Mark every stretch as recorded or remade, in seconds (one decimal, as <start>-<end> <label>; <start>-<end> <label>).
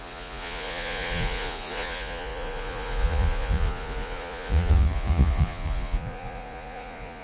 0.0-7.2 remade